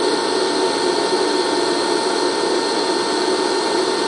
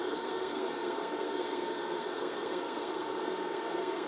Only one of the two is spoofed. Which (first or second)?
second